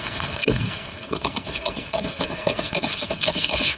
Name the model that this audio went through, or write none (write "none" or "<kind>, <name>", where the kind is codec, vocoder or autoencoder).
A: codec, SNAC